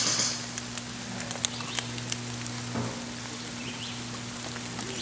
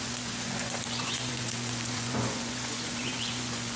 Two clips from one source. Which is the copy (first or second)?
second